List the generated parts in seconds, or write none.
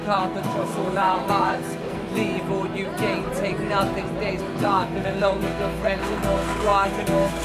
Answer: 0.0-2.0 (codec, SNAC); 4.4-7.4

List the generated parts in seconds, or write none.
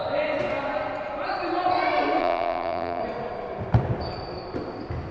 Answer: 2.2-3.0 (vocoder, BigVGAN v2)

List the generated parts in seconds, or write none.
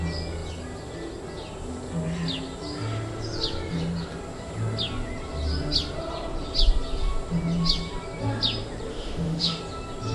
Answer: 8.9-9.6 (autoencoder, DAC-VAE)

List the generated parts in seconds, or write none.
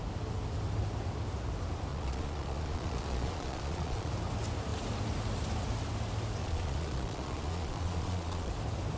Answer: 1.9-4.1 (vocoder, Vocos); 6.4-8.5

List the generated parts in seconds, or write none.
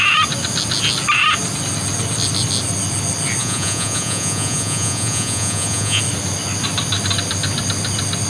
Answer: 3.4-6.0 (vocoder, Vocos)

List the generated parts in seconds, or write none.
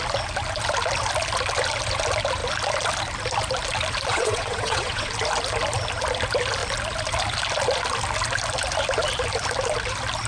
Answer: 4.1-5.1 (vocoder, WaveNeXt)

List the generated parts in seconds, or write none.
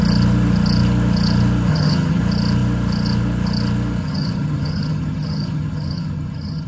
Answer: 1.7-2.2 (vocoder, HiFi-GAN); 4.0-6.7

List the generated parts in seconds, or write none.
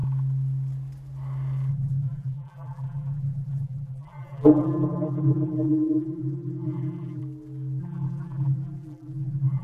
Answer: 1.7-7.2 (vocoder, BigVGAN v2); 7.8-9.6